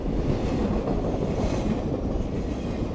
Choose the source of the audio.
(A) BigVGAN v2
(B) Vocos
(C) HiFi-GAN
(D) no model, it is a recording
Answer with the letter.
A